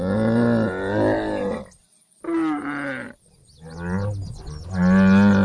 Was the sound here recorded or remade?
recorded